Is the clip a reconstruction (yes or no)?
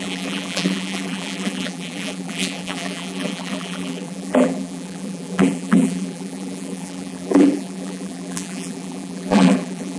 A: yes